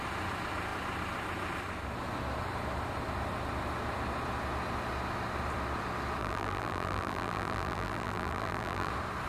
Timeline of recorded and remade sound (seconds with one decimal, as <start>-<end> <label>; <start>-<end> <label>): 0.0-6.2 recorded; 6.2-8.9 remade; 8.9-9.3 recorded